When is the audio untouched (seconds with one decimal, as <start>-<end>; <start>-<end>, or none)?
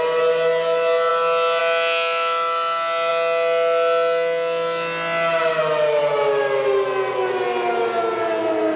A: 0.0-8.8